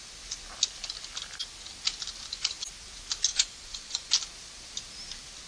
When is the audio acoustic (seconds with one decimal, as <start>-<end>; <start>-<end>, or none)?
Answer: 0.0-3.3; 4.1-5.5